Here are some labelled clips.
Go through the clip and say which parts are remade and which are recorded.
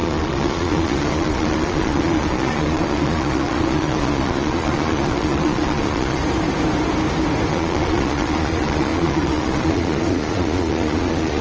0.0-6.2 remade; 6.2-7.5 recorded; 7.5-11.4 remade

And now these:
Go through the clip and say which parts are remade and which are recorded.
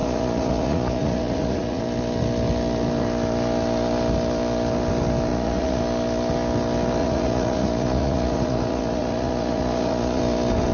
0.0-1.8 remade; 1.8-5.3 recorded; 5.3-5.8 remade; 5.8-7.0 recorded; 7.0-10.2 remade; 10.2-10.7 recorded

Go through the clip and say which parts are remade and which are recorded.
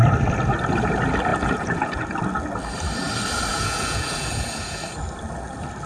0.0-1.3 recorded; 1.3-2.0 remade; 2.0-3.5 recorded; 3.5-4.8 remade; 4.8-5.9 recorded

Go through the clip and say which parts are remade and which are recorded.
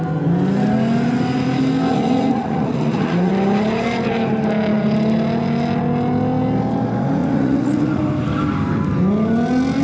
0.0-1.9 recorded; 1.9-3.3 remade; 3.3-7.2 recorded; 7.2-8.0 remade; 8.0-9.8 recorded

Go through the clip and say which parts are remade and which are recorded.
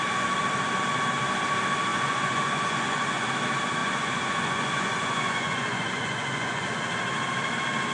0.0-1.9 recorded; 1.9-3.3 remade; 3.3-3.8 recorded; 3.8-6.8 remade; 6.8-7.9 recorded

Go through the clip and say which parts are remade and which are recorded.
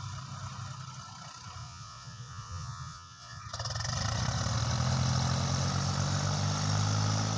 0.0-1.6 recorded; 1.6-3.4 remade; 3.4-7.4 recorded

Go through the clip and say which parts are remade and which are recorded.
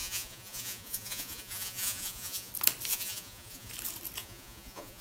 0.0-2.5 remade; 2.5-2.9 recorded; 2.9-3.7 remade; 3.7-4.2 recorded; 4.2-5.0 remade